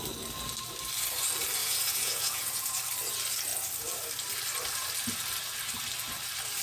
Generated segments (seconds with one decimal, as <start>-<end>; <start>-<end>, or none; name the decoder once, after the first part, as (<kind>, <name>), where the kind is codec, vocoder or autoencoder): 1.6-2.8 (vocoder, Vocos)